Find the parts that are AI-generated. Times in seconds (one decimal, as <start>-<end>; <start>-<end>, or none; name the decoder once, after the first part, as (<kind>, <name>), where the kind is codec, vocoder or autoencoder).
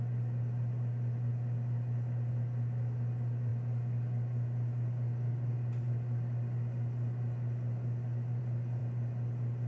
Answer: none